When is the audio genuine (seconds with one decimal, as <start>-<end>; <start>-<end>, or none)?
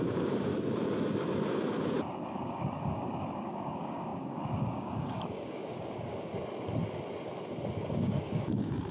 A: 0.5-1.8; 6.3-7.9